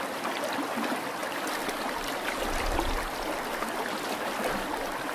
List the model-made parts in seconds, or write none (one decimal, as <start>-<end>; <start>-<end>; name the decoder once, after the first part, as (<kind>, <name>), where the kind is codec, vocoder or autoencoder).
none